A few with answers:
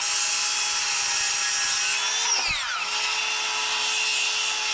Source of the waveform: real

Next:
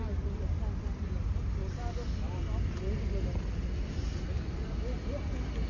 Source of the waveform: real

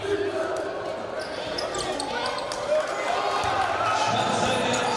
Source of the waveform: real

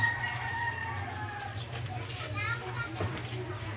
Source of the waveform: real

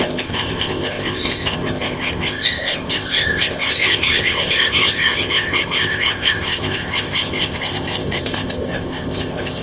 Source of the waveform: fake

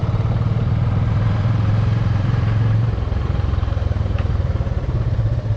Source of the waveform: fake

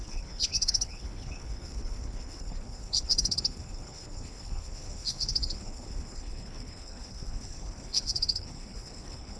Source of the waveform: fake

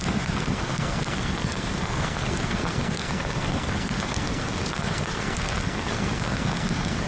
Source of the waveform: fake